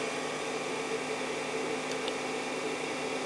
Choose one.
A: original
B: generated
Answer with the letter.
A